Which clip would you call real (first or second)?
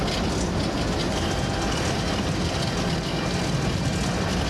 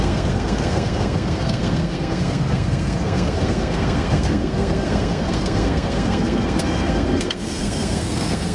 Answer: first